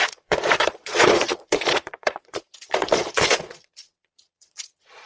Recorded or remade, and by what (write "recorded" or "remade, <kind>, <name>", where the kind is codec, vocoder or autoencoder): remade, vocoder, Vocos